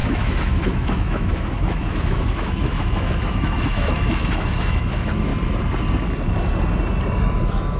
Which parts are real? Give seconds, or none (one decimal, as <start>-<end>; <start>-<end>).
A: 5.3-7.2